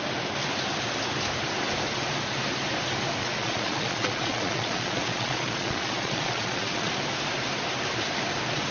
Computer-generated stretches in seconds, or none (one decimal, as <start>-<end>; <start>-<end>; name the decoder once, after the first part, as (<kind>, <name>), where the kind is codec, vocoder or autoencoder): 3.2-6.9 (vocoder, Vocos)